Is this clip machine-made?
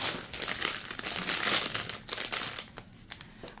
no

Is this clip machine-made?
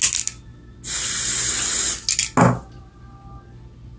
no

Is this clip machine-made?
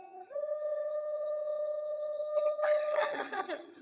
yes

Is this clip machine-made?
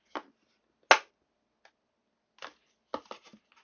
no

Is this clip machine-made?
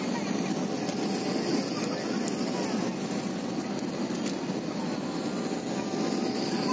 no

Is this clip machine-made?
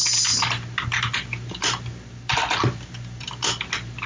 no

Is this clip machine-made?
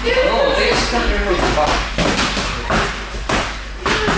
no